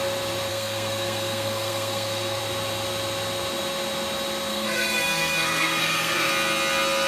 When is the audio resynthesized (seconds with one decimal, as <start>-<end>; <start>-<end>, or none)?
0.5-2.4; 4.5-6.3